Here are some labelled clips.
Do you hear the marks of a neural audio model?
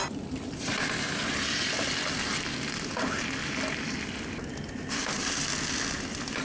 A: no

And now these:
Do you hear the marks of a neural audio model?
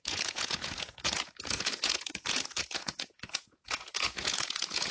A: yes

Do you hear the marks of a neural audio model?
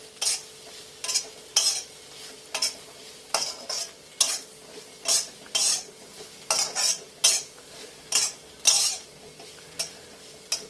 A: no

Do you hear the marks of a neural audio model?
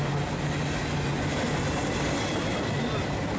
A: no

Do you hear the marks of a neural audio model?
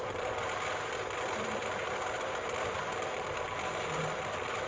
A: no